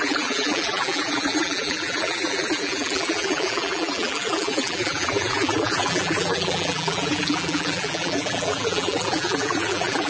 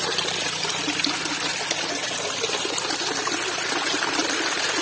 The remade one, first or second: first